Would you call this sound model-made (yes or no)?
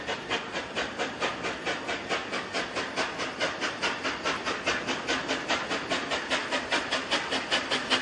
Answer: no